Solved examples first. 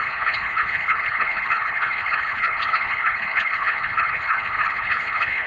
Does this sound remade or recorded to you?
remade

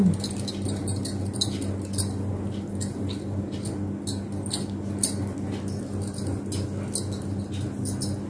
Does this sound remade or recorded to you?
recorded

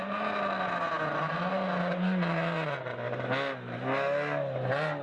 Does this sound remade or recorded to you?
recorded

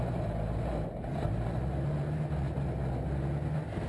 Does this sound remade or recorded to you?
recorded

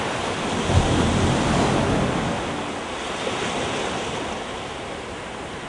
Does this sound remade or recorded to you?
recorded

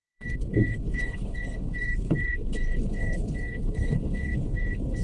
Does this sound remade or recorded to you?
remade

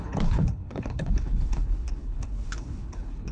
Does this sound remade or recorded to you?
remade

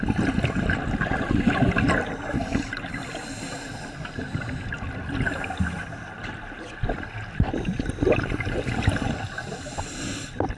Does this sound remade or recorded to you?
recorded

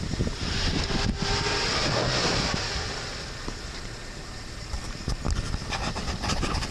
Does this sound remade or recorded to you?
recorded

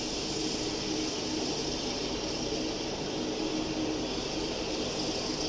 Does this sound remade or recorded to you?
recorded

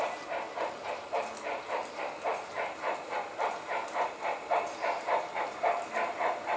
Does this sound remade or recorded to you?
recorded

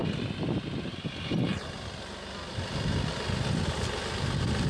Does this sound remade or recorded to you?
recorded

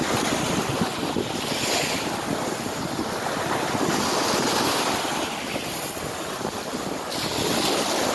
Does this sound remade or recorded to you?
recorded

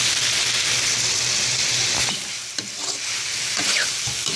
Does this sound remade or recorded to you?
recorded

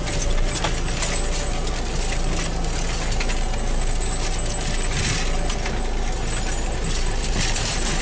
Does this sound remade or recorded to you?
recorded